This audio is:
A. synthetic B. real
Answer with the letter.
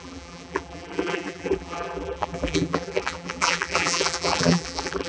A